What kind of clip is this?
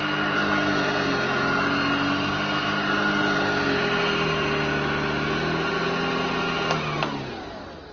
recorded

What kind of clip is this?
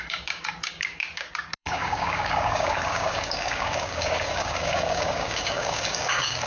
remade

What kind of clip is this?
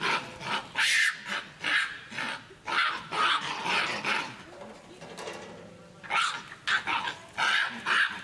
recorded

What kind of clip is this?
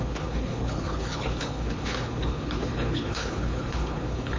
remade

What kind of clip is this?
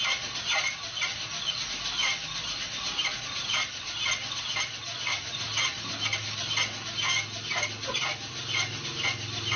recorded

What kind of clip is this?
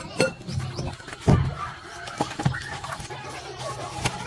recorded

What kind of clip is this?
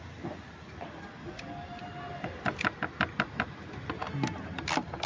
recorded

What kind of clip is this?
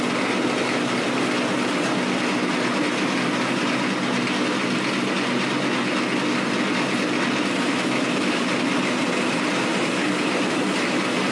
recorded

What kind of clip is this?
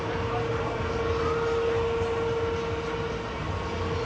recorded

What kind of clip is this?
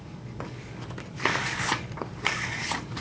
remade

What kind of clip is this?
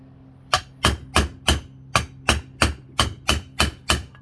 recorded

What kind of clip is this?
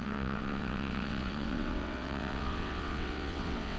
remade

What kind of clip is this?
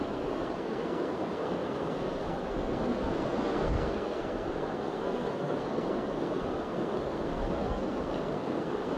remade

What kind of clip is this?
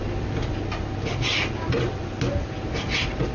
recorded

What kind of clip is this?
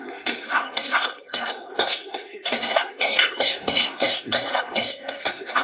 remade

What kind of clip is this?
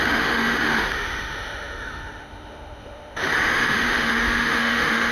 remade